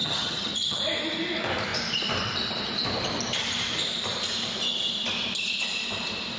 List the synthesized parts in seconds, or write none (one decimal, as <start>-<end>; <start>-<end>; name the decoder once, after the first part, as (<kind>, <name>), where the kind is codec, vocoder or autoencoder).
0.0-0.8 (vocoder, HiFi-GAN)